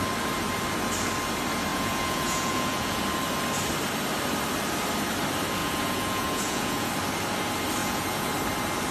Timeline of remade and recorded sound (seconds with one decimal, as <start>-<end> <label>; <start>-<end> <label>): 0.0-1.7 recorded; 1.7-3.0 remade; 3.0-5.6 recorded; 5.6-6.9 remade; 6.9-7.8 recorded; 7.8-8.3 remade; 8.3-8.9 recorded